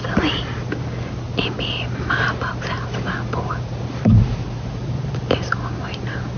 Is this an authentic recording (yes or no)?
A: yes